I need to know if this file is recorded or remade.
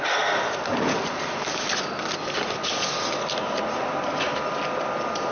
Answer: recorded